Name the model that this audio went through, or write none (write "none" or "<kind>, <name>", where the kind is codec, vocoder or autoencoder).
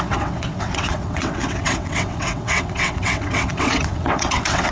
vocoder, WaveNeXt